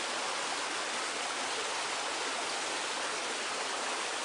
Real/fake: real